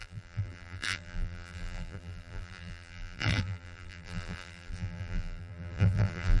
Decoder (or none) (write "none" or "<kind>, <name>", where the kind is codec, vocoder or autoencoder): vocoder, BigVGAN v2